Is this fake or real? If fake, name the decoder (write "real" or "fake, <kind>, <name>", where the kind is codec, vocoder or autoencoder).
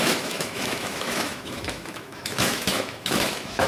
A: fake, autoencoder, DAC-VAE